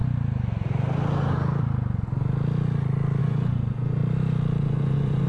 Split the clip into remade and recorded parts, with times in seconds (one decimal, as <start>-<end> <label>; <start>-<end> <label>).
0.0-3.2 recorded; 3.2-4.0 remade; 4.0-4.6 recorded; 4.6-5.3 remade